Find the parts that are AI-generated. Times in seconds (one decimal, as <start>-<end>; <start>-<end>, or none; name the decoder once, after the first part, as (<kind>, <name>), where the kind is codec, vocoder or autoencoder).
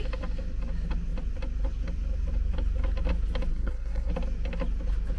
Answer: 3.5-4.1 (codec, SNAC)